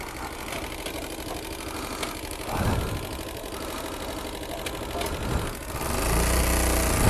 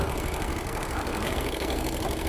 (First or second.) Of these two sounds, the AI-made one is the second